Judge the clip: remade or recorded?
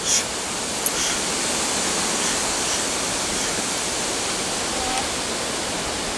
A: recorded